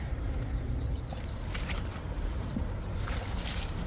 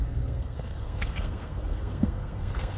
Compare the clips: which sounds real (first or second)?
first